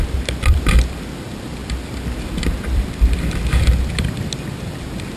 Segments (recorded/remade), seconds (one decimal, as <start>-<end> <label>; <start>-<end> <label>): 0.0-5.2 recorded